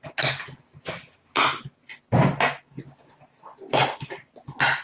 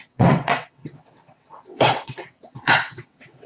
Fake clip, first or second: second